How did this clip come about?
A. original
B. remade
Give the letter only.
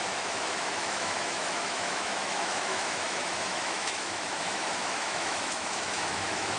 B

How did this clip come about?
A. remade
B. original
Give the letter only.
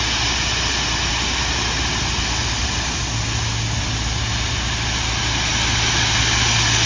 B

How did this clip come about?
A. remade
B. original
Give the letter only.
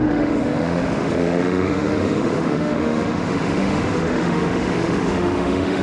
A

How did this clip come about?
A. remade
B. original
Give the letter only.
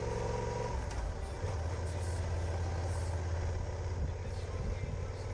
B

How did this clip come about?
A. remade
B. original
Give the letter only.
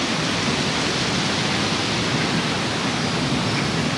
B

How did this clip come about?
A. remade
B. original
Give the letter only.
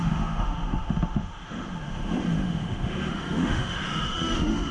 A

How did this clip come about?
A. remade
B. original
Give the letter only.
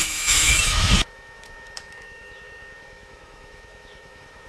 A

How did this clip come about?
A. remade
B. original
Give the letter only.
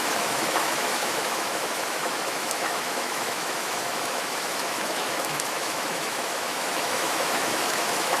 A